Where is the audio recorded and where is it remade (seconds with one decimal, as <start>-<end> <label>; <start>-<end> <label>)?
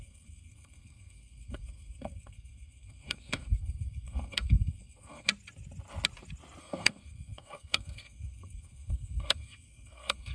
0.0-5.3 remade; 5.3-6.6 recorded; 6.6-10.3 remade